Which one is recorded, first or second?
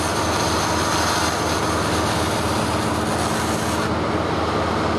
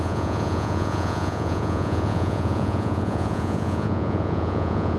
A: first